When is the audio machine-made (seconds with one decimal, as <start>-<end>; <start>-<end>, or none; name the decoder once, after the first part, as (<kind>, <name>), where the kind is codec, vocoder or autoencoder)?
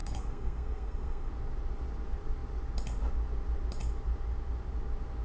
0.0-1.3 (codec, SNAC)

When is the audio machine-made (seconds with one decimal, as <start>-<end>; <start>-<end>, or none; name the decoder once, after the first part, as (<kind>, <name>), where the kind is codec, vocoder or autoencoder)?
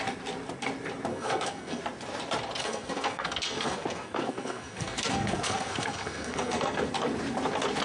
1.1-1.8 (codec, SNAC); 2.6-6.9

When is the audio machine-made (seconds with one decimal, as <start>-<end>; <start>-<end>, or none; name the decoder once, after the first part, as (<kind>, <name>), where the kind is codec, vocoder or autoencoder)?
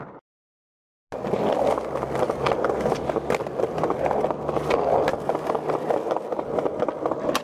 none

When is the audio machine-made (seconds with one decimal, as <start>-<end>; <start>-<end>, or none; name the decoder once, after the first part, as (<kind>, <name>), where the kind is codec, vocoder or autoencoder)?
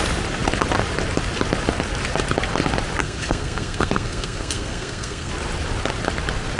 3.0-5.3 (codec, SNAC)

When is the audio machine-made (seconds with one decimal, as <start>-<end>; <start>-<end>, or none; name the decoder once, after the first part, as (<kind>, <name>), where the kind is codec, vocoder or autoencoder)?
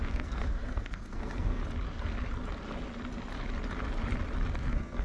0.0-1.6 (codec, SNAC); 4.6-5.0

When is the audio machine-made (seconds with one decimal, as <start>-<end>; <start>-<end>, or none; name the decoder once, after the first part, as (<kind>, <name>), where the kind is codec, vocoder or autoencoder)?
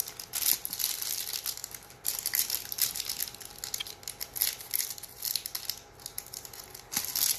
none